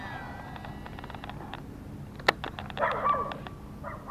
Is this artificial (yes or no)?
no